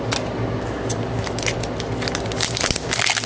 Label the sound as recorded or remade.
recorded